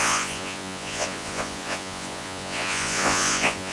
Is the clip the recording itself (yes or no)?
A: no